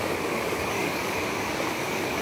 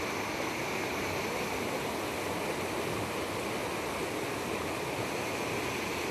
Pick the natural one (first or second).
second